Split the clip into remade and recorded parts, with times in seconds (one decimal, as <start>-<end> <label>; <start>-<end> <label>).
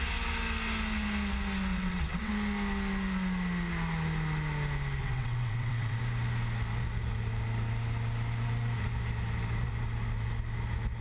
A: 0.0-1.7 recorded; 1.7-2.3 remade; 2.3-5.0 recorded; 5.0-6.0 remade; 6.0-11.0 recorded